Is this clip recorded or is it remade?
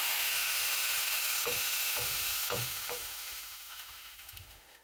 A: remade